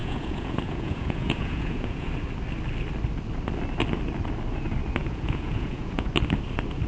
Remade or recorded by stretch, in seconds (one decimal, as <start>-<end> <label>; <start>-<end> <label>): 0.0-2.1 remade; 2.1-5.0 recorded; 5.0-6.1 remade; 6.1-6.9 recorded